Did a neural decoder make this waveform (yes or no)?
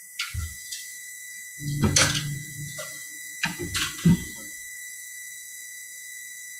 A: yes